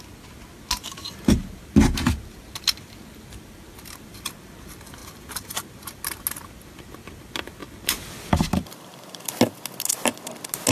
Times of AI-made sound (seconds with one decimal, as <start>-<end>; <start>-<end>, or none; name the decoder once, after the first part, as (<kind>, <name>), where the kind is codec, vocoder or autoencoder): none